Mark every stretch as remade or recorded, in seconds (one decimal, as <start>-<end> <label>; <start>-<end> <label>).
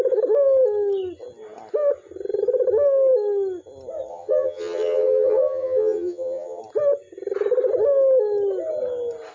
0.0-4.1 recorded; 4.1-6.6 remade; 6.6-9.3 recorded